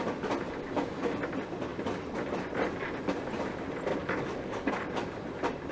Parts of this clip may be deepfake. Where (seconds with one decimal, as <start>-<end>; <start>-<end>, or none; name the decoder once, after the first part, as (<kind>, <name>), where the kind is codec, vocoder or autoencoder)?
3.9-4.7 (codec, DAC)